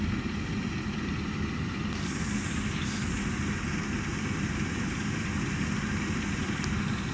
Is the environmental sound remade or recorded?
remade